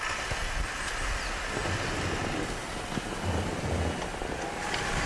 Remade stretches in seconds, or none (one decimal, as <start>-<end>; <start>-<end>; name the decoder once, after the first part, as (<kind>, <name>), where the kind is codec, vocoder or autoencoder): none